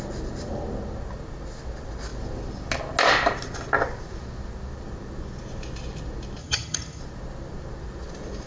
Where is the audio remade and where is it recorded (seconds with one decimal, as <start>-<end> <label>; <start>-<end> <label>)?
0.0-6.4 recorded; 6.4-7.0 remade; 7.0-8.5 recorded